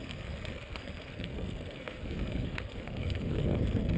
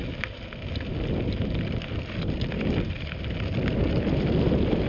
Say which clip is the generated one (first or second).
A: first